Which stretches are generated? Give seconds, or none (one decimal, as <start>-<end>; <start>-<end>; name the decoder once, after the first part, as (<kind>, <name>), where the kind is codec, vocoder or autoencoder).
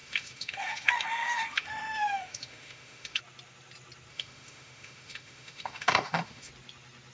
0.0-3.2 (autoencoder, DAC-VAE); 4.1-6.5